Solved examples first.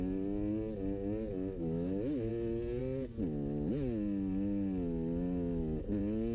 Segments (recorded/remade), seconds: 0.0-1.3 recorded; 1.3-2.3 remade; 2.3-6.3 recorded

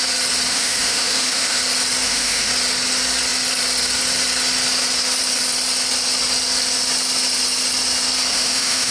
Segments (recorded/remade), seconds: 0.0-0.5 recorded; 0.5-1.6 remade; 1.6-2.0 recorded; 2.0-2.5 remade; 2.5-8.3 recorded; 8.3-8.9 remade

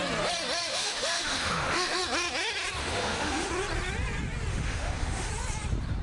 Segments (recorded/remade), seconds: 0.0-0.7 recorded; 0.7-2.0 remade; 2.0-2.8 recorded; 2.8-3.5 remade; 3.5-4.5 recorded; 4.5-5.3 remade; 5.3-6.0 recorded

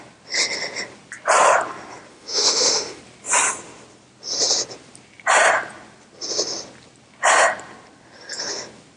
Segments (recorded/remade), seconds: 0.0-2.1 recorded; 2.1-3.0 remade; 3.0-9.0 recorded

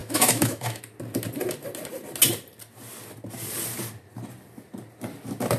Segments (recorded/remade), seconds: 0.0-0.8 remade; 0.8-5.6 recorded